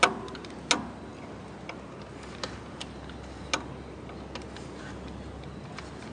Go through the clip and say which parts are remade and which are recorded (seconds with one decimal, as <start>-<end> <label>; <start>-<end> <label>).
0.0-6.1 recorded